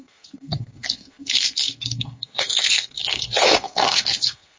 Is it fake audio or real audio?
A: fake